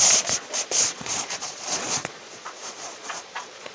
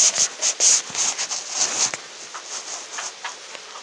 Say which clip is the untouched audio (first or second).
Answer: second